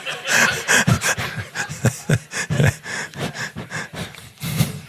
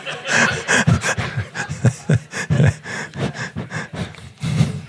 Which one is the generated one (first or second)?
first